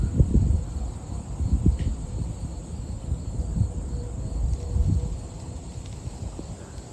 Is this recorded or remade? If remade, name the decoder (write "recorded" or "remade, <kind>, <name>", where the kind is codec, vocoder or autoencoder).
recorded